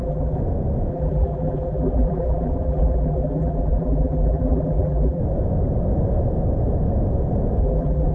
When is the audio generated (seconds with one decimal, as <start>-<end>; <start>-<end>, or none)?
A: 0.0-0.4; 0.9-5.2; 7.6-8.1